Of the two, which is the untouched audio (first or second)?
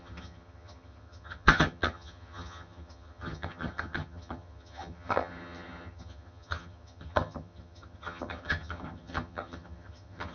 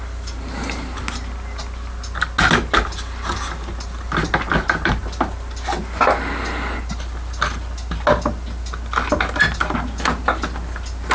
second